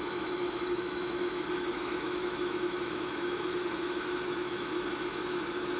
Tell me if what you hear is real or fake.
fake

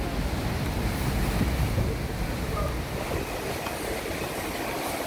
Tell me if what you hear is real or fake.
real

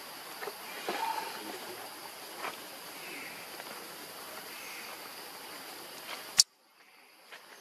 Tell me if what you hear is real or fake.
real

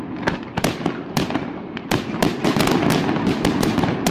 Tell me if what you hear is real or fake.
real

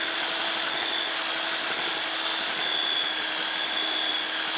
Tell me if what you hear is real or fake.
real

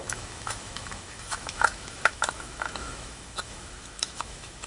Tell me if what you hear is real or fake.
fake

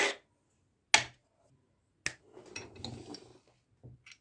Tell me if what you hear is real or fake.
real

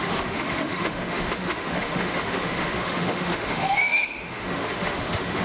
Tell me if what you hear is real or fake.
fake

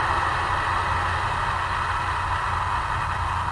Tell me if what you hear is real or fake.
real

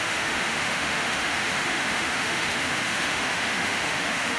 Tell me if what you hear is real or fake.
fake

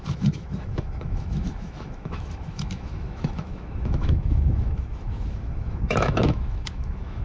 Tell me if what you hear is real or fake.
fake